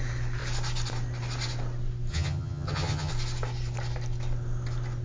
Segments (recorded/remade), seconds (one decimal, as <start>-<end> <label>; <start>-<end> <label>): 0.0-2.1 recorded; 2.1-3.1 remade; 3.1-5.0 recorded